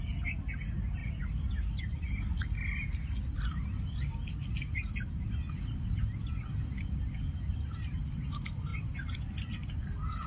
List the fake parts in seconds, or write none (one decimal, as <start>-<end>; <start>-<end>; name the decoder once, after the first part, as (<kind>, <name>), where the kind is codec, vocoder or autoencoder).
none